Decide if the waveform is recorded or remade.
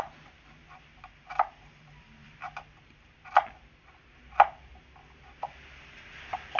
remade